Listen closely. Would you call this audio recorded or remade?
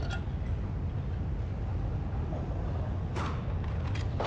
recorded